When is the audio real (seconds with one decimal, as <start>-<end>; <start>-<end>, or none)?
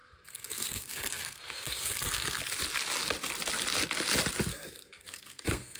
2.4-4.5